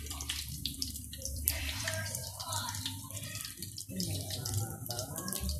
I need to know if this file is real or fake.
fake